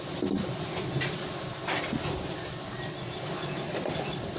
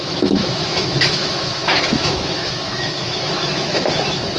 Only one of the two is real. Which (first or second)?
first